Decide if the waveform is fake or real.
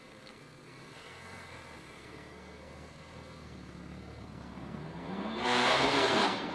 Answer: fake